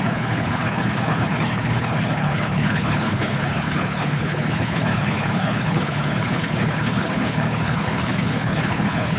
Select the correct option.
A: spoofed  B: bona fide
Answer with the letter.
A